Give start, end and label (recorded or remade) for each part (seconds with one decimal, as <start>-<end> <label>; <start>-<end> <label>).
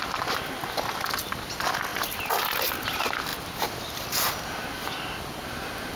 0.0-1.9 recorded; 1.9-2.9 remade; 2.9-6.0 recorded